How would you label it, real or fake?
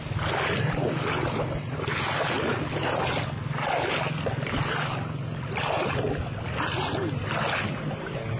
real